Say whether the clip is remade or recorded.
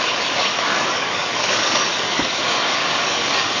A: remade